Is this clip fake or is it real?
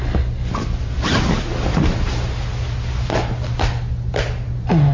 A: real